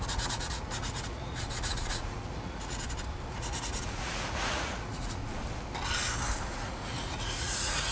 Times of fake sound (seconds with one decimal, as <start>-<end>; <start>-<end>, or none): 0.0-2.8; 3.3-5.2; 6.5-7.9